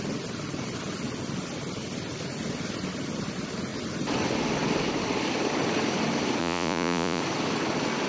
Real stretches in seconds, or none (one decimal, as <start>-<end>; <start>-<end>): 0.0-6.4; 7.2-8.1

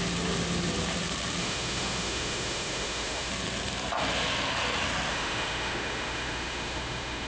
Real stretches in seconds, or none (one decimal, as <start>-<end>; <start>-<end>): 0.0-1.4; 3.3-5.1